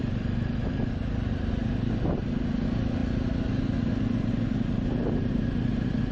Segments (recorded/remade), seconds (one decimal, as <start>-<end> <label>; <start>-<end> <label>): 0.0-6.1 recorded